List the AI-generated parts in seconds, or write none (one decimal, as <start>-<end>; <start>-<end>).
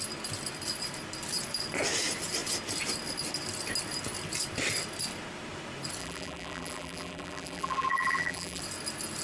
6.0-8.6